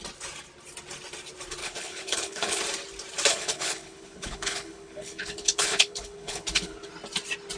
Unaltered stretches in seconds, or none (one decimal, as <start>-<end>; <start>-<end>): 0.0-1.6; 2.6-3.3; 6.9-7.6